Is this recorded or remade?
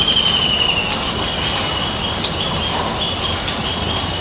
recorded